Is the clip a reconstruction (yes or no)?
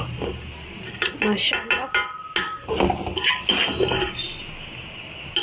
no